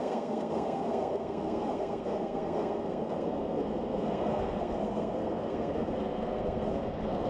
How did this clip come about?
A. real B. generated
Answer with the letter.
B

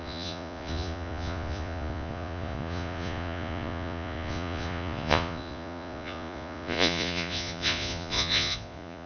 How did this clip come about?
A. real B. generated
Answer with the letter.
B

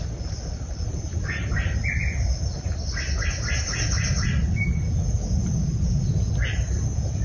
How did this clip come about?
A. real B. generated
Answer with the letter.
A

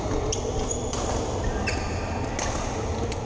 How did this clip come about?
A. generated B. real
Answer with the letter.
B